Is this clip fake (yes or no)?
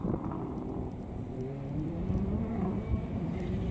yes